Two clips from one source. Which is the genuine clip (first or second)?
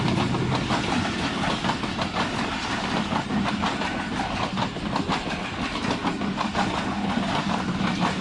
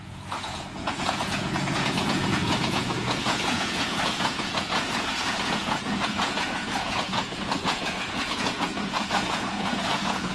first